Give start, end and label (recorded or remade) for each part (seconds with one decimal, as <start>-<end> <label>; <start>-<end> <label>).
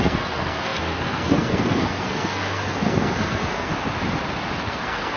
0.0-3.7 remade; 3.7-4.6 recorded; 4.6-5.2 remade